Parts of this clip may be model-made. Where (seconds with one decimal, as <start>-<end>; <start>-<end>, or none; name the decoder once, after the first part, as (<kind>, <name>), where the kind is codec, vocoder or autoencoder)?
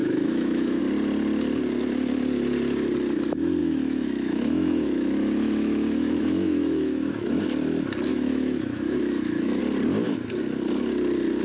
0.0-0.8 (autoencoder, DAC-VAE); 3.6-7.4; 8.1-9.6